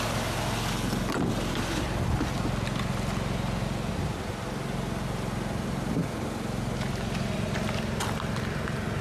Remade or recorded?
recorded